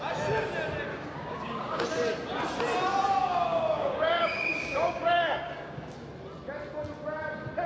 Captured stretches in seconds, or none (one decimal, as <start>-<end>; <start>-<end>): 0.0-0.9; 1.8-3.2; 5.9-7.7